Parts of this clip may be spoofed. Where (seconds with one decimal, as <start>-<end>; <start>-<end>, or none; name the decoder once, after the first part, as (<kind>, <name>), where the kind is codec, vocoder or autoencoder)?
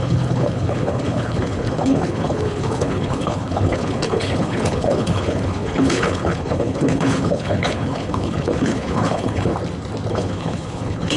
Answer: 0.0-9.5 (codec, HILCodec); 10.1-11.2